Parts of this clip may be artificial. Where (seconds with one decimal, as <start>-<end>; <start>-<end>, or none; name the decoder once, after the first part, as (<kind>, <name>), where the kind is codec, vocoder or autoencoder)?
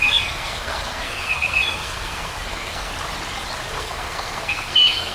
0.0-2.9 (codec, SNAC); 3.7-5.1